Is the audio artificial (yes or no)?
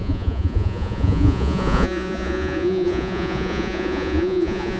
yes